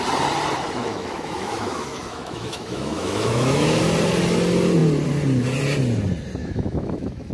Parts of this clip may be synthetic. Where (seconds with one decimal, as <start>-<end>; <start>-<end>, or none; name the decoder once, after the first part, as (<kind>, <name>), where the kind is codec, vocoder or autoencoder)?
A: 0.8-3.8 (autoencoder, DAC-VAE); 6.4-7.3